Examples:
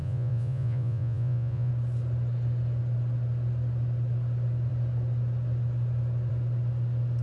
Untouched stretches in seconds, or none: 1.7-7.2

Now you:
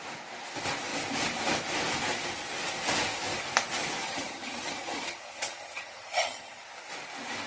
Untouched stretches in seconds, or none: 0.0-4.0; 6.6-7.5

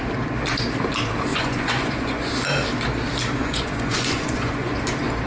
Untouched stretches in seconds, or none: 0.0-1.3; 2.3-3.4; 4.8-5.3

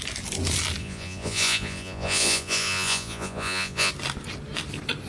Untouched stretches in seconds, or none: 0.0-0.8; 3.9-5.1